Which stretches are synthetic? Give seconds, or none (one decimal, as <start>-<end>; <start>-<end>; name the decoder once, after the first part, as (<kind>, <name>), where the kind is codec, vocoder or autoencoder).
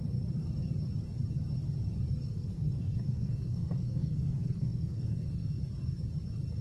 2.2-5.6 (codec, SNAC)